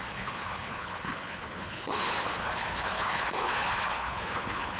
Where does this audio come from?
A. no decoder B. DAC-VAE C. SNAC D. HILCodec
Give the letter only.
D